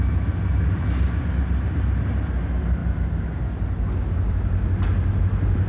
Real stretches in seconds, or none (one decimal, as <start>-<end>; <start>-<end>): 0.0-5.7